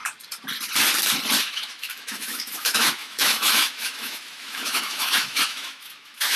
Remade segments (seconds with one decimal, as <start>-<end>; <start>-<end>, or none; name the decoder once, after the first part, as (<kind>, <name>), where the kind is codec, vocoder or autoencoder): 1.4-6.4 (autoencoder, DAC-VAE)

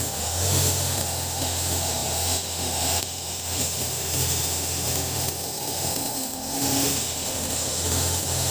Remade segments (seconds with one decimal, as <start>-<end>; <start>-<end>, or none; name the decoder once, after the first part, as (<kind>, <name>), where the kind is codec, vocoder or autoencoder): 0.0-8.5 (autoencoder, DAC-VAE)

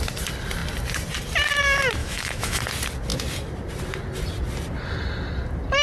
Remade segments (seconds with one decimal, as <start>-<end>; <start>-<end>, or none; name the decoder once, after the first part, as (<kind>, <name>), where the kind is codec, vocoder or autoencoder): 2.0-2.6 (autoencoder, DAC-VAE)